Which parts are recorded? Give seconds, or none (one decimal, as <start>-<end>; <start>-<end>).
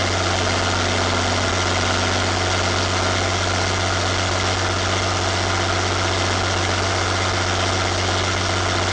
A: 0.0-8.9